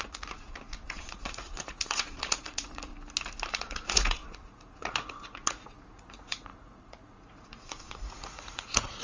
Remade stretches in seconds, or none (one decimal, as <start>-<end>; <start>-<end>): 0.0-2.9; 3.5-9.0